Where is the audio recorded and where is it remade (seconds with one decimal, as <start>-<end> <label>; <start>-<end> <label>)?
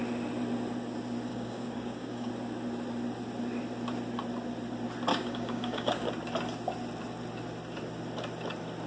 0.0-1.3 recorded; 1.3-2.3 remade; 2.3-5.1 recorded; 5.1-6.1 remade; 6.1-8.9 recorded